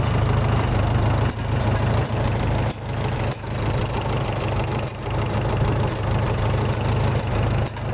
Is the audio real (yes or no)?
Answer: yes